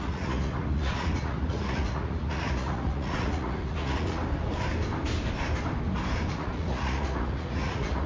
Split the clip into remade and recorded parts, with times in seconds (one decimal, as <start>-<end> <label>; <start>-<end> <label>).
0.0-4.2 remade; 4.2-6.3 recorded; 6.3-8.1 remade

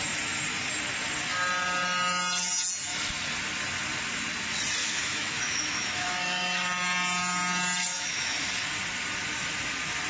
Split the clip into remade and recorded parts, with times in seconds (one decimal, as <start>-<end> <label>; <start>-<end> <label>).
0.0-4.8 recorded; 4.8-6.4 remade; 6.4-7.9 recorded; 7.9-8.4 remade; 8.4-10.1 recorded

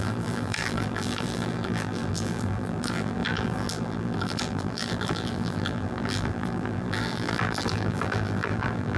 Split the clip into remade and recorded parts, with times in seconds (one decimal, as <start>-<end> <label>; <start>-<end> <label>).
0.0-9.0 remade

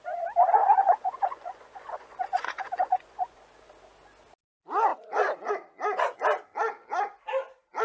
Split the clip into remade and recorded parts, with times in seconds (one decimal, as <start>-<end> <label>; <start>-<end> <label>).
0.0-0.6 recorded; 0.6-3.5 remade; 3.5-4.9 recorded; 4.9-5.5 remade; 5.5-7.8 recorded

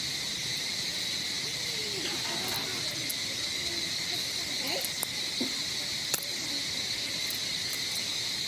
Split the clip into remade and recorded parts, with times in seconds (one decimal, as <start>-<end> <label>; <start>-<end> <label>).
0.0-8.5 recorded

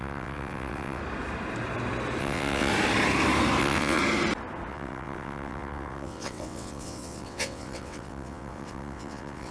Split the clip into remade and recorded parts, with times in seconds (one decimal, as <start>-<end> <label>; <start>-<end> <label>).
0.0-1.0 remade; 1.0-2.2 recorded; 2.2-2.7 remade; 2.7-3.6 recorded; 3.6-4.0 remade; 4.0-4.7 recorded; 4.7-9.5 remade